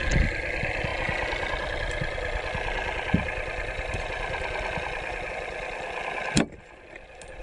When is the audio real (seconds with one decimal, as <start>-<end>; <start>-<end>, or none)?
0.0-7.4